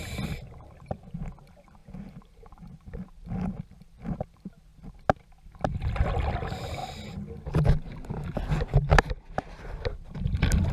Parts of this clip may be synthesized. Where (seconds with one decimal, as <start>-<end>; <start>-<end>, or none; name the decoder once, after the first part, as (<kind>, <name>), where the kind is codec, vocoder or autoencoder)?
0.0-1.8 (vocoder, BigVGAN v2); 3.7-4.7; 6.3-6.8; 9.8-10.7